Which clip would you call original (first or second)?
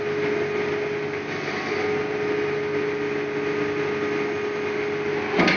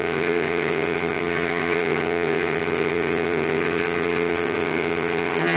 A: first